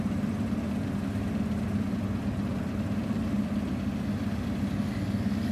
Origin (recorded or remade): recorded